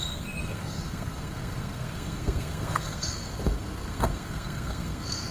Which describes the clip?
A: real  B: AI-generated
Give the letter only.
B